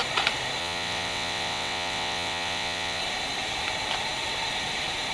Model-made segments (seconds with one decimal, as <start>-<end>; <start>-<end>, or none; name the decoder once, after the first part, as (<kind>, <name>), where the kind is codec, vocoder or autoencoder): 0.6-3.0 (vocoder, WaveNeXt)